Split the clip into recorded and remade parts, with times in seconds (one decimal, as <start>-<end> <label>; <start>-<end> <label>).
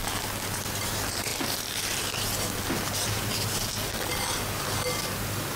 0.0-5.6 recorded